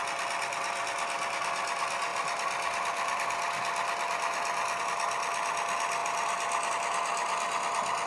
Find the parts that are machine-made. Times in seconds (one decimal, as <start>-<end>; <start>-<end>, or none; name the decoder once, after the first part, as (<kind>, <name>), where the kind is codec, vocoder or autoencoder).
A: 2.1-4.8 (vocoder, BigVGAN v2)